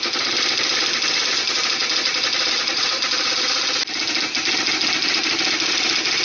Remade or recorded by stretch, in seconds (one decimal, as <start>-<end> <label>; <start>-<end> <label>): 0.0-6.2 recorded